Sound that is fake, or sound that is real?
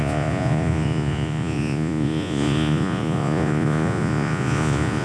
fake